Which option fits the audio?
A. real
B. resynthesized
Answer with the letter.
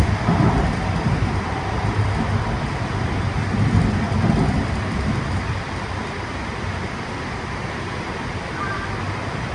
B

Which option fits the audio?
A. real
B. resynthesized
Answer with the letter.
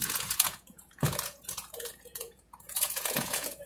B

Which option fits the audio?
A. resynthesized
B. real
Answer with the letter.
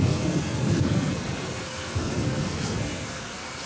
A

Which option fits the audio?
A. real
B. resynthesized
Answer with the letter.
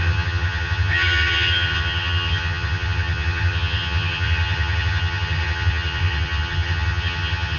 B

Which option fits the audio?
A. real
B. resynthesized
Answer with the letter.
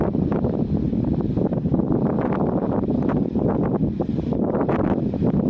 A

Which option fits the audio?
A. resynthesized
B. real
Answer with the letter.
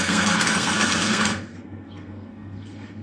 A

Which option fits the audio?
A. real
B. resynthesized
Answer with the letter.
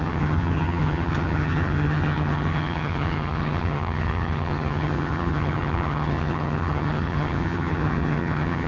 B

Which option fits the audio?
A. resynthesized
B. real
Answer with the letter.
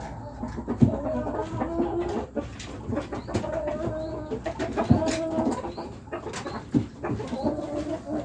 B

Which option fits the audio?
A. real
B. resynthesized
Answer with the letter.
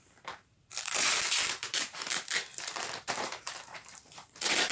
B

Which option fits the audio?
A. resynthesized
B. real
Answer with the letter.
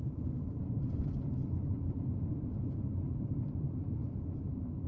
A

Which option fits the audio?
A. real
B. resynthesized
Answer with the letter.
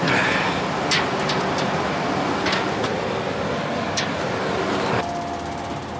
A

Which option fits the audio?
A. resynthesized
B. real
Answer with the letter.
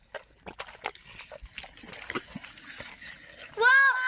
B